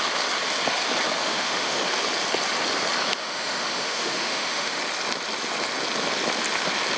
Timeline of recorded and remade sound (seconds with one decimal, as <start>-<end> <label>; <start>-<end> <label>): 0.0-1.2 recorded; 1.2-1.8 remade; 1.8-3.2 recorded; 3.2-4.8 remade; 4.8-7.0 recorded